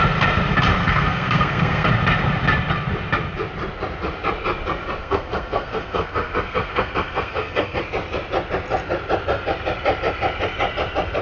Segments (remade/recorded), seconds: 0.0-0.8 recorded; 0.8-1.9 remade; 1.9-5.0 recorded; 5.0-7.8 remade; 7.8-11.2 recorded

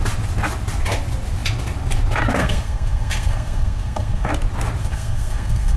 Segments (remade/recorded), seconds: 0.0-2.4 recorded; 2.4-4.3 remade; 4.3-4.8 recorded; 4.8-5.8 remade

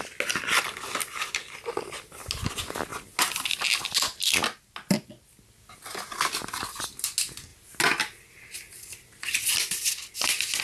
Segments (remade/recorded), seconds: 0.0-10.6 recorded

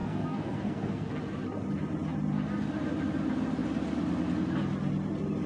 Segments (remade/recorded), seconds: 0.0-1.1 remade; 1.1-5.5 recorded

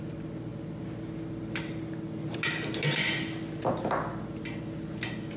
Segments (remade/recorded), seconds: 0.0-5.4 recorded

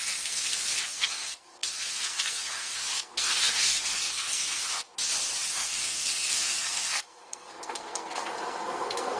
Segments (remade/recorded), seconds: 0.0-4.6 remade; 4.6-5.5 recorded; 5.5-9.2 remade

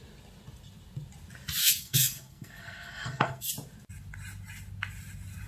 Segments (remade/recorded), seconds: 0.0-1.6 recorded; 1.6-3.5 remade; 3.5-5.5 recorded

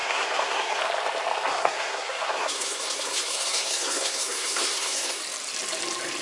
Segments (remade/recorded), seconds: 0.0-0.8 remade; 0.8-1.5 recorded; 1.5-5.2 remade; 5.2-6.2 recorded